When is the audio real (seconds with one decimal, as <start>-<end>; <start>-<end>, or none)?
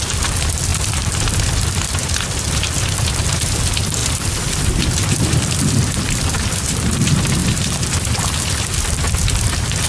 0.0-0.7; 2.5-4.0; 6.3-7.4; 8.2-9.9